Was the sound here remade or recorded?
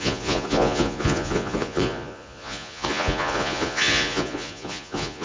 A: remade